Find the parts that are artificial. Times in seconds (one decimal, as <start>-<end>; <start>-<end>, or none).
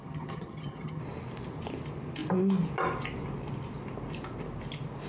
0.0-1.0